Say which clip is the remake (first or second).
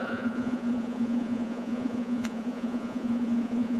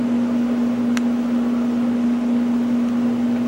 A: first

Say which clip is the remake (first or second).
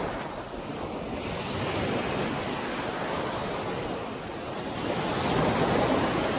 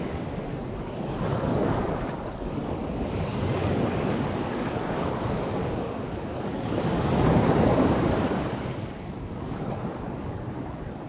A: second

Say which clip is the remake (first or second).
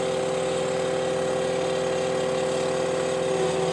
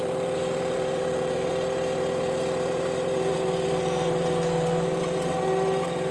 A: second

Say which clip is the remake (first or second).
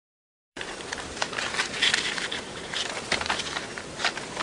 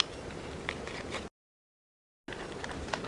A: first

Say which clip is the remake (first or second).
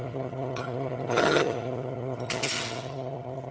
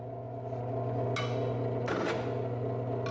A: first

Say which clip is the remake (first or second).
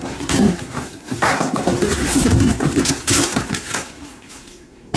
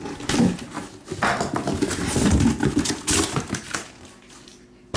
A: first